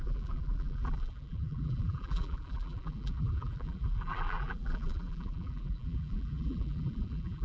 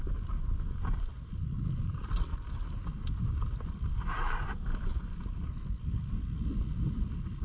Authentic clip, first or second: second